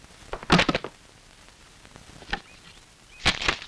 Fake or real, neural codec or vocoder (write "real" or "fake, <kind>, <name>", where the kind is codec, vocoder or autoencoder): real